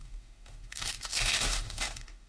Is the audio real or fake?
fake